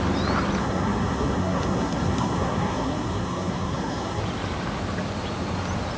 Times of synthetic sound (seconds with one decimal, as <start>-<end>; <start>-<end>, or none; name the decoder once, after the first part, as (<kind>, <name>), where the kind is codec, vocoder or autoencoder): 0.6-4.2 (codec, SNAC)